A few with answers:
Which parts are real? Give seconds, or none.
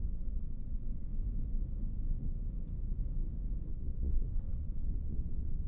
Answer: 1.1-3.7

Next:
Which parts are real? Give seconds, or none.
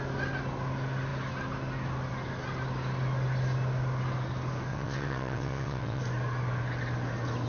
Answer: 0.0-4.7; 6.0-7.5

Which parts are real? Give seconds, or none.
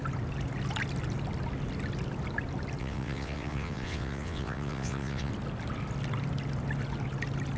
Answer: 0.0-2.8; 5.3-7.6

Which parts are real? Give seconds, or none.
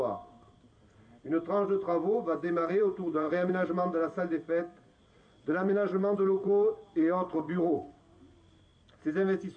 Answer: 0.0-2.6; 3.7-5.0; 8.0-9.6